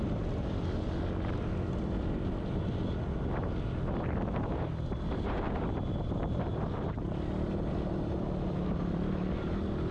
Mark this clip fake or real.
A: real